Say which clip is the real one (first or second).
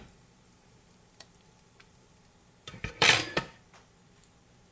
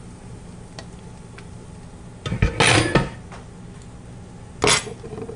second